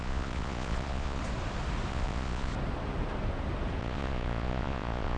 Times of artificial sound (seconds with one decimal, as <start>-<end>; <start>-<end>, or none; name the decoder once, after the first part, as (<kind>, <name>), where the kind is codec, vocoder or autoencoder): 0.0-1.2 (vocoder, Vocos); 1.9-2.5; 3.8-5.2